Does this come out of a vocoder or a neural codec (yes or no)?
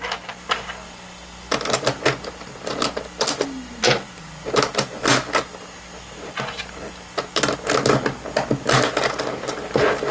no